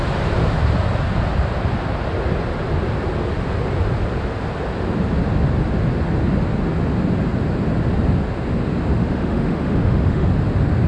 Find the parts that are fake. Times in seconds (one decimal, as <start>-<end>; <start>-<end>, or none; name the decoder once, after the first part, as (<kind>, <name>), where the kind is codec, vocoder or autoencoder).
9.0-10.3 (autoencoder, DAC-VAE)